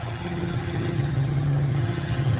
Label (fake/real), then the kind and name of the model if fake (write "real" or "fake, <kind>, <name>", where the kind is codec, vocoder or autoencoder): fake, vocoder, HiFi-GAN